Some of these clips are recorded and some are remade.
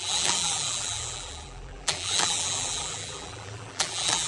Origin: remade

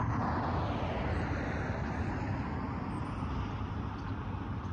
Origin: remade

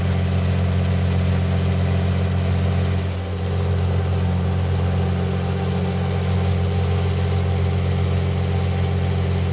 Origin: recorded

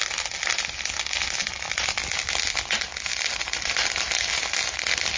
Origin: recorded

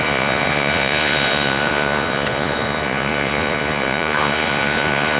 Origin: remade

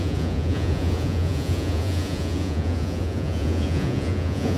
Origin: remade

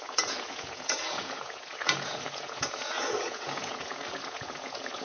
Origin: remade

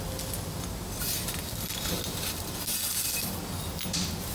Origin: recorded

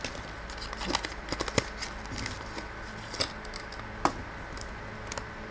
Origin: recorded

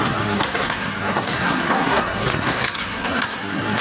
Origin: remade